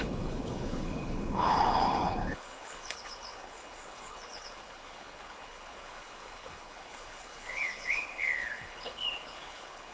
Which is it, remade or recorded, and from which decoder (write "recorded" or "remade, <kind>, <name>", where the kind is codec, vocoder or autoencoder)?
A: remade, codec, HILCodec